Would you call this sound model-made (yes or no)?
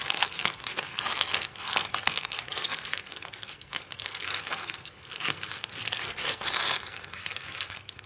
yes